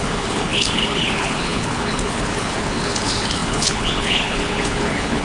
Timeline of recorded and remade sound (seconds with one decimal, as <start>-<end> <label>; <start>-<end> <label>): 0.0-5.2 remade